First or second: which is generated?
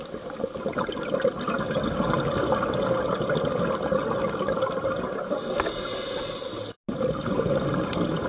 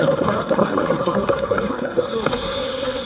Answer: second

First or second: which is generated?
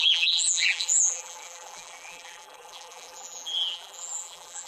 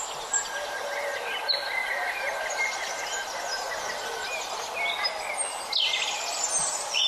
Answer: first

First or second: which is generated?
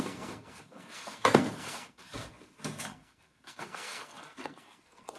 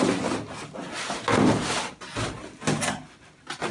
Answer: first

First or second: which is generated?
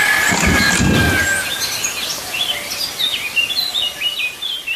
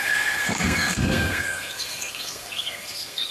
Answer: second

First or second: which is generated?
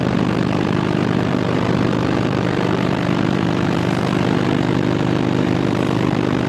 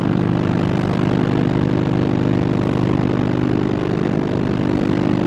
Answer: first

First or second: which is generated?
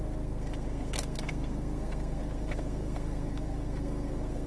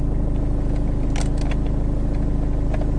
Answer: first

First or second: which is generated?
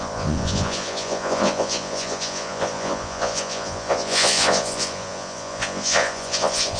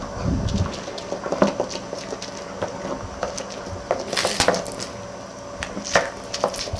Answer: first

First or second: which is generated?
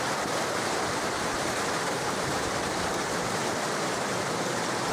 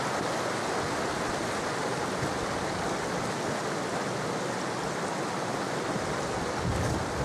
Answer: first